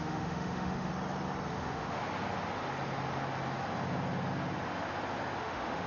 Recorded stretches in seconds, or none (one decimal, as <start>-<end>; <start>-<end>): 0.9-1.5; 2.0-5.4